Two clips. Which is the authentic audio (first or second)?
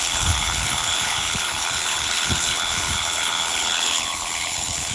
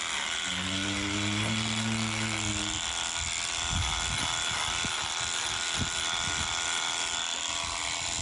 second